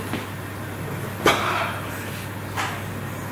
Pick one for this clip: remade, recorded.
recorded